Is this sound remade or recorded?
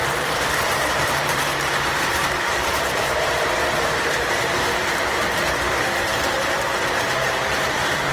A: remade